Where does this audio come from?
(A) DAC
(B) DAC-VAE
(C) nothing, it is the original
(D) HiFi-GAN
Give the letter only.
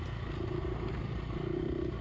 C